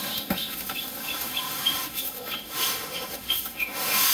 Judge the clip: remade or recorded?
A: remade